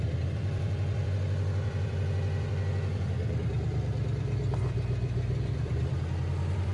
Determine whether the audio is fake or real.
fake